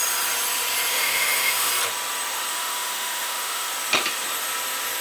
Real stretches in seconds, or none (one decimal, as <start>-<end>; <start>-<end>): 0.0-0.9; 1.7-2.5; 3.7-5.0